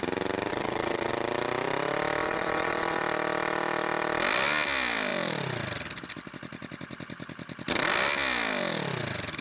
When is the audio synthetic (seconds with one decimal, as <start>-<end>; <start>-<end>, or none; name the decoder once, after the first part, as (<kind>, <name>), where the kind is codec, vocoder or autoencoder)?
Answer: 0.5-1.1 (vocoder, WaveNeXt); 2.2-3.0